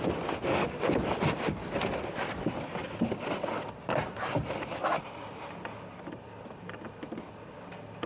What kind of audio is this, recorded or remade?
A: recorded